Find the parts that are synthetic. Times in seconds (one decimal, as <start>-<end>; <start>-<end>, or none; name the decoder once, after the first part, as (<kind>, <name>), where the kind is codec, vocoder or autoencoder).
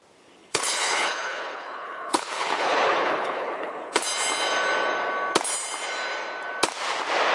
0.4-4.0 (codec, HILCodec)